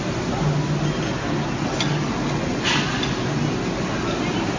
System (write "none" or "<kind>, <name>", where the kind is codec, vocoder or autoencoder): none